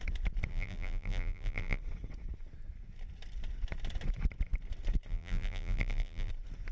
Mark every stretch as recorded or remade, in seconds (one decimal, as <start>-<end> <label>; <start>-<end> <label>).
0.0-0.5 recorded; 0.5-1.8 remade; 1.8-5.1 recorded; 5.1-6.3 remade; 6.3-6.7 recorded